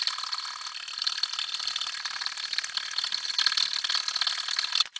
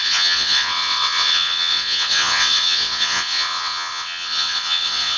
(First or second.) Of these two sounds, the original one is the first